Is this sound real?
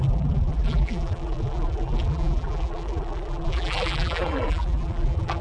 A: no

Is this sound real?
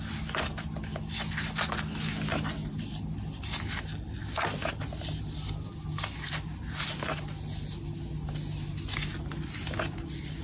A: yes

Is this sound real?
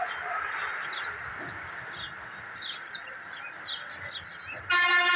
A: yes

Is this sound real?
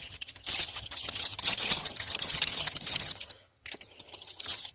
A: no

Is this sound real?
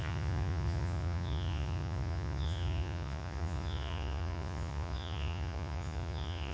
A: no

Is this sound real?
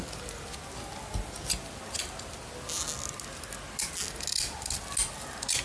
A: yes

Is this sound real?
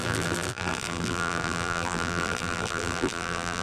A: no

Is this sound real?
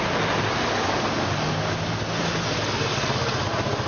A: yes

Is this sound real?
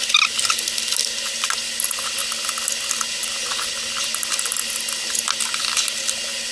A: yes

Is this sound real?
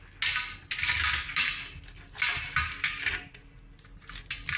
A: yes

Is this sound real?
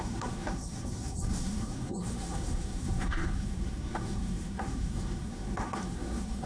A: no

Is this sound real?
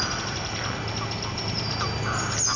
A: yes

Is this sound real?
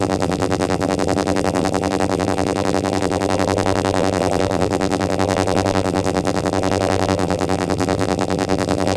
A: no